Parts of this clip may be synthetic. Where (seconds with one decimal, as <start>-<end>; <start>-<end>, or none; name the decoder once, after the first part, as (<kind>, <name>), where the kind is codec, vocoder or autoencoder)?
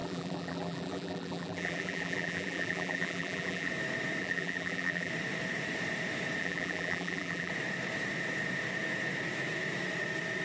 0.0-3.7 (vocoder, BigVGAN v2); 4.2-5.1; 6.4-7.5